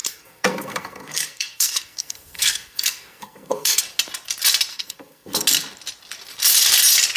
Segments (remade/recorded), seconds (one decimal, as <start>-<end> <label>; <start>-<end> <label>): 0.0-3.8 remade; 3.8-4.7 recorded; 4.7-5.4 remade; 5.4-7.2 recorded